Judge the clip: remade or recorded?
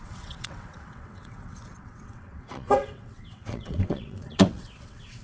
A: remade